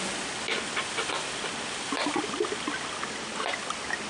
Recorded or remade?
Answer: recorded